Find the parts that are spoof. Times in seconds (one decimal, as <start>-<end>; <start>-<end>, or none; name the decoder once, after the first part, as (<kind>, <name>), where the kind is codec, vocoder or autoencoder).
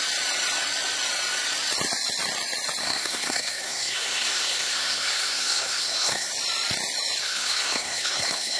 2.8-6.3 (codec, SNAC); 7.2-8.6